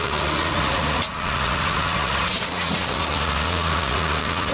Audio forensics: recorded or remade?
remade